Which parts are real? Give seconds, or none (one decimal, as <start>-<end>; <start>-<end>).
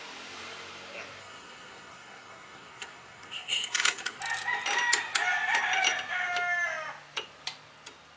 0.0-1.2; 4.2-8.2